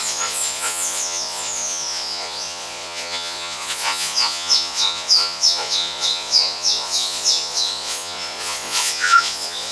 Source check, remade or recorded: remade